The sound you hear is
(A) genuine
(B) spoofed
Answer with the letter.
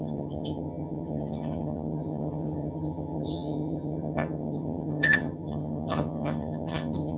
B